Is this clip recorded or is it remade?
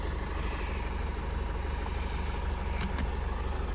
recorded